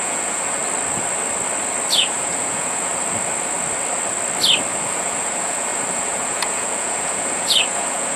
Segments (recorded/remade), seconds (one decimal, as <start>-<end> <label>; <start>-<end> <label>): 0.0-0.6 remade; 0.6-1.9 recorded; 1.9-2.9 remade; 2.9-4.7 recorded; 4.7-8.2 remade